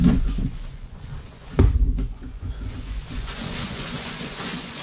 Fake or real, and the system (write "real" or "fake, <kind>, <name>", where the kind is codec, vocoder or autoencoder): fake, vocoder, Vocos